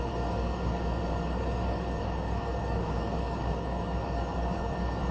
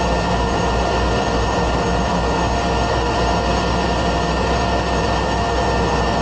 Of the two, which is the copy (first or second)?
first